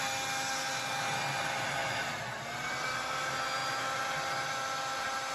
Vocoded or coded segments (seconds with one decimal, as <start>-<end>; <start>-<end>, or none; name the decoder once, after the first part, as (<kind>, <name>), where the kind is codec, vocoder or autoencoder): 1.8-2.4 (vocoder, BigVGAN v2)